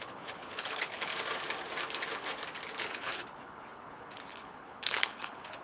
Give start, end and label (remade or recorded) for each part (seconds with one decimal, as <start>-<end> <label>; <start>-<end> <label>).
0.0-1.1 remade; 1.1-2.8 recorded; 2.8-5.6 remade